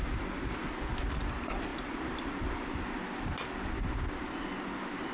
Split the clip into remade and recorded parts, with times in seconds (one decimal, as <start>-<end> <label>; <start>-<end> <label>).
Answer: 0.0-5.1 recorded